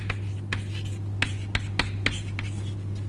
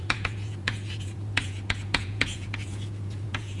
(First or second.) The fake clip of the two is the second